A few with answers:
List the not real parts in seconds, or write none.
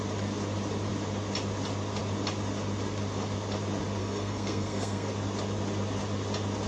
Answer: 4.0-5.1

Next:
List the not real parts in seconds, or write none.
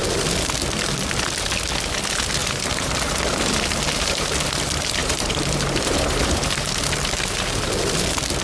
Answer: 2.4-2.9; 5.0-6.8